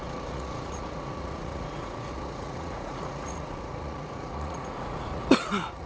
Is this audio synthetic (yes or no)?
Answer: yes